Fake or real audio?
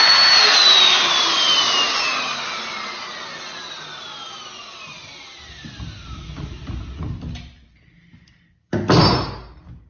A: real